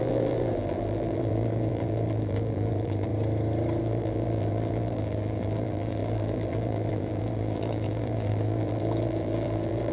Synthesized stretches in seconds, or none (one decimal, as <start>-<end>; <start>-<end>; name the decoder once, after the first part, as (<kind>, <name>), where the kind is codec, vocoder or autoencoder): 0.0-3.1 (vocoder, BigVGAN v2); 3.8-9.9